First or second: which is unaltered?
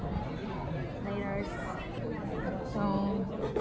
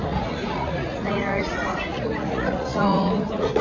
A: first